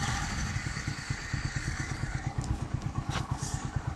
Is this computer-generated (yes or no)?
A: yes